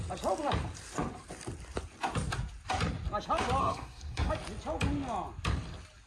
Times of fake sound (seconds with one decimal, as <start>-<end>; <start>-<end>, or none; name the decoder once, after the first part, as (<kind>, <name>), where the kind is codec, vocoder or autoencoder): 3.6-4.3 (codec, SNAC)